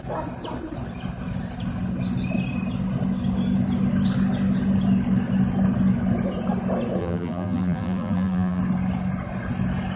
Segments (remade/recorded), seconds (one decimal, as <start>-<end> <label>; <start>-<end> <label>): 0.0-7.0 recorded; 7.0-8.6 remade; 8.6-10.0 recorded